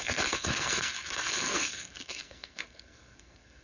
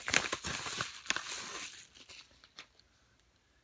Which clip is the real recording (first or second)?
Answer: second